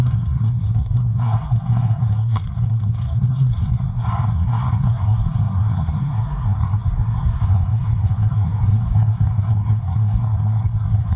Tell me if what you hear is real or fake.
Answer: fake